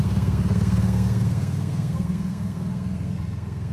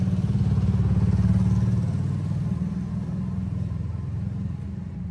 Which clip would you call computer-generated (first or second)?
first